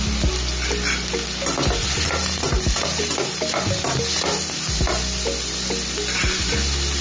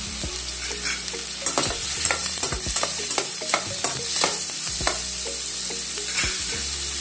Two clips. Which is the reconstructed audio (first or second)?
second